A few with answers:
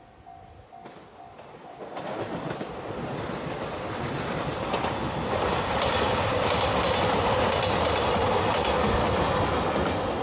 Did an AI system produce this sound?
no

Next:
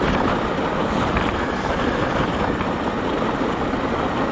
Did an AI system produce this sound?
no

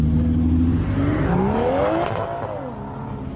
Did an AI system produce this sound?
no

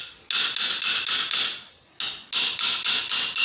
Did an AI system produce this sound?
no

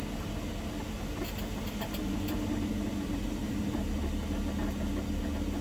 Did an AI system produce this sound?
no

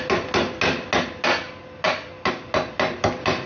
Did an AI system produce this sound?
no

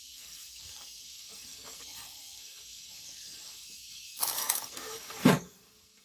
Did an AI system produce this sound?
yes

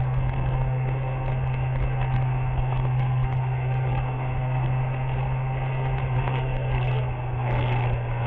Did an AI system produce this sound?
yes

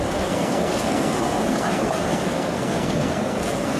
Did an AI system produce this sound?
yes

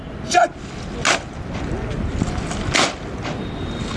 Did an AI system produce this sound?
no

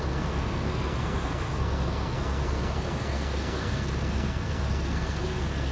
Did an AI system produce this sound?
yes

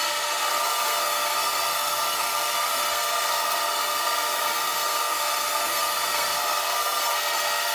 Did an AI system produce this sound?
yes